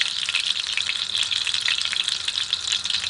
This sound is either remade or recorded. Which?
remade